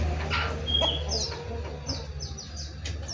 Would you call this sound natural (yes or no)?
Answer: yes